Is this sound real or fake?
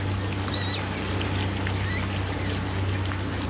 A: real